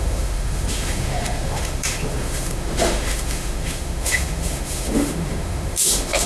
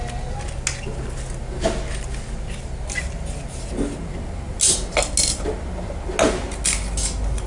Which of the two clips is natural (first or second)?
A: second